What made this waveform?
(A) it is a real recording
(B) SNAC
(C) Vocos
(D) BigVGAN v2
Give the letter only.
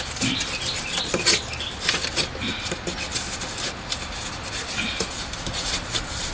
A